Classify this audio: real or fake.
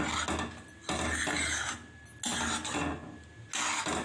real